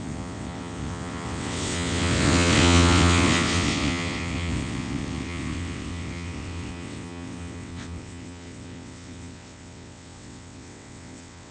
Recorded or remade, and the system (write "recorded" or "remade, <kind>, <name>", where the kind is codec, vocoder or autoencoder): remade, vocoder, WaveNeXt